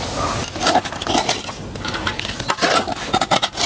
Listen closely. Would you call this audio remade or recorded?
recorded